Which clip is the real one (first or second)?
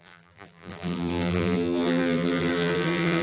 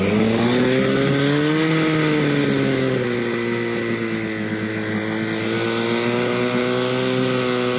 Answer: second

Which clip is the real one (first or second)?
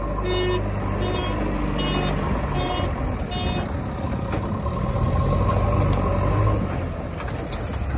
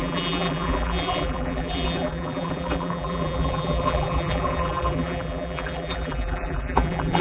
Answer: first